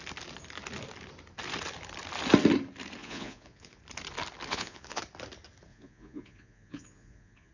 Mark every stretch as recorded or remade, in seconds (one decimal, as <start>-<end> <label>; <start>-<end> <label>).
0.0-3.0 recorded; 3.0-3.8 remade; 3.8-4.5 recorded; 4.5-5.0 remade; 5.0-5.7 recorded; 5.7-7.5 remade